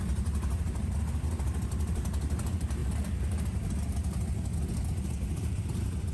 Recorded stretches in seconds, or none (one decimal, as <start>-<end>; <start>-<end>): 2.8-4.9